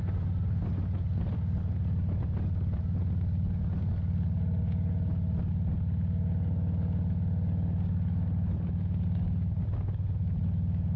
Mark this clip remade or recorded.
recorded